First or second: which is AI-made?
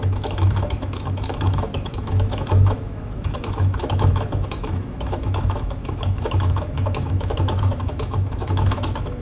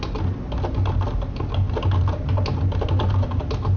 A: first